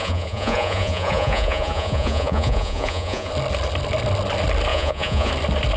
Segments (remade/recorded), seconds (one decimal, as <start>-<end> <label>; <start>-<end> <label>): 0.0-3.3 remade; 3.3-4.7 recorded; 4.7-5.3 remade; 5.3-5.8 recorded